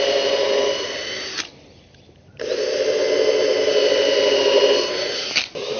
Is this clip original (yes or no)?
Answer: yes